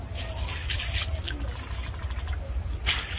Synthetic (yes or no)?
no